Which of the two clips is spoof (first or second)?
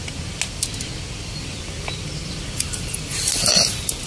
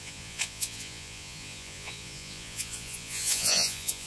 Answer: second